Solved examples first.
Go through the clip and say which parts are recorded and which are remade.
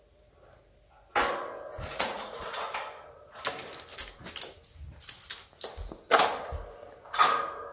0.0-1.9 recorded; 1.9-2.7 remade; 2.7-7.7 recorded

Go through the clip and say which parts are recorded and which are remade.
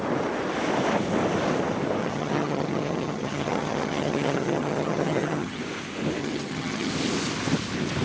0.0-2.0 recorded; 2.0-5.6 remade; 5.6-6.2 recorded; 6.2-6.9 remade; 6.9-8.0 recorded